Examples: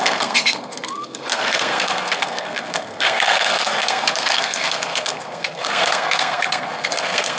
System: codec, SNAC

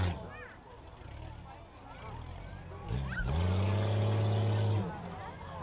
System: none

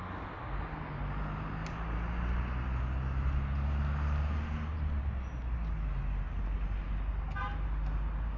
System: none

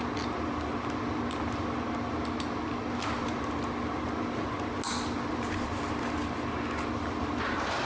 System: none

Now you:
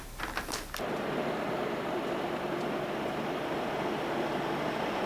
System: vocoder, BigVGAN v2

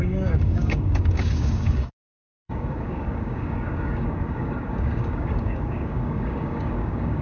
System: codec, DAC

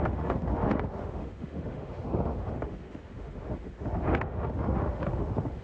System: autoencoder, DAC-VAE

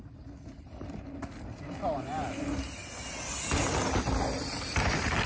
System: none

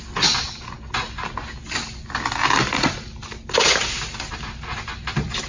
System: none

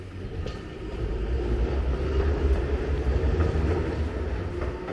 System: none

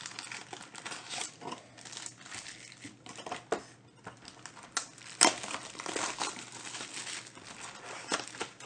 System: none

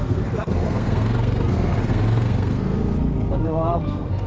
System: codec, SNAC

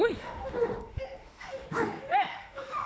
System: autoencoder, DAC-VAE